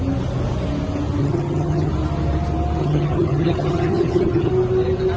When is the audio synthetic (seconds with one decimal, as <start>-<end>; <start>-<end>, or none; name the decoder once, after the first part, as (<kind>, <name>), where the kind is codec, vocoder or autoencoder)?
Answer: 1.2-1.9 (vocoder, HiFi-GAN); 2.8-4.5